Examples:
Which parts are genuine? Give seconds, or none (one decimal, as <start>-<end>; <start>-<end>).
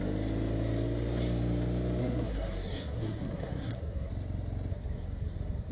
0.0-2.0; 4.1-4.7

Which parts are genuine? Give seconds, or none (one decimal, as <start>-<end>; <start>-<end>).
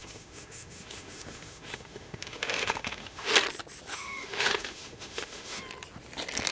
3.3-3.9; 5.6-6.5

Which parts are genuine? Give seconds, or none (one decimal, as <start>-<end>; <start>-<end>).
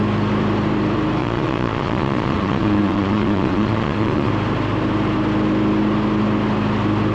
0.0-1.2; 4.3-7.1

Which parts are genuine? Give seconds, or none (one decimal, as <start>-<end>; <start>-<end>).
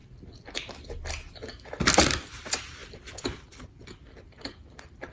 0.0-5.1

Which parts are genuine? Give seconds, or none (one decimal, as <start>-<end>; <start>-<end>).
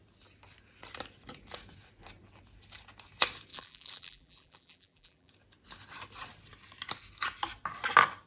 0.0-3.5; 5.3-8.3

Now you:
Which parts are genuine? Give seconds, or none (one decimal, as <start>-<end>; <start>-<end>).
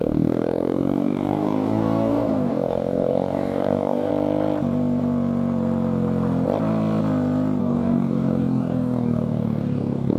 4.1-7.6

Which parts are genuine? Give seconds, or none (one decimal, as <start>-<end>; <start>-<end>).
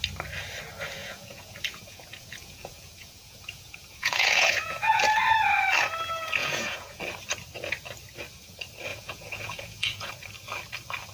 0.0-1.0; 5.0-6.4; 7.0-8.9; 10.1-11.1